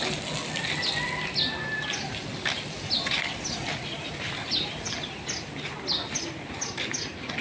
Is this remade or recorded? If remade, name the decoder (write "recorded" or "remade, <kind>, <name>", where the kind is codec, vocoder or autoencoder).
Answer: recorded